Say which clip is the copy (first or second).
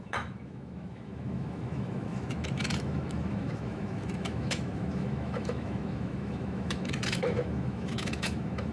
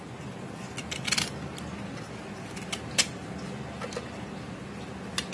first